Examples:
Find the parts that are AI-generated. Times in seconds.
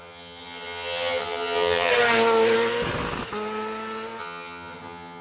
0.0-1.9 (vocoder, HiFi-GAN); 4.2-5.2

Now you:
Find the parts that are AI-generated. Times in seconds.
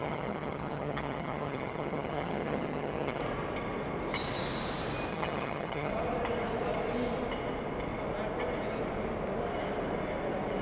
0.0-3.2 (vocoder, HiFi-GAN); 5.1-5.9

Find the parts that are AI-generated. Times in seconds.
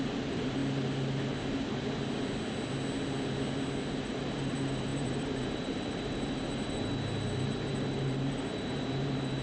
0.0-0.6 (vocoder, BigVGAN v2); 4.0-9.4